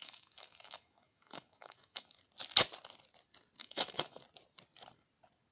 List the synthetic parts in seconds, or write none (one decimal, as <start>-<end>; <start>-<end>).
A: 0.0-2.2; 3.6-4.2